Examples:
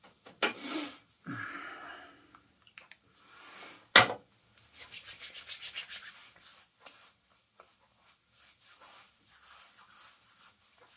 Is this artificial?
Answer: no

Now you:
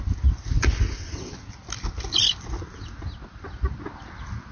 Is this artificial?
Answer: no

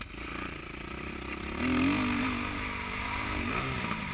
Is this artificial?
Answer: no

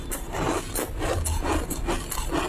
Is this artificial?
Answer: no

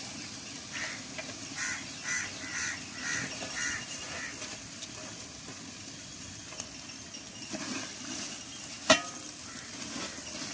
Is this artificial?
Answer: no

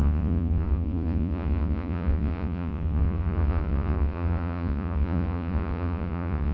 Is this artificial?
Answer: yes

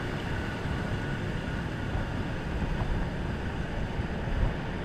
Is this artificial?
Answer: no